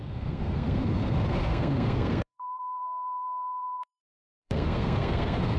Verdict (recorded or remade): remade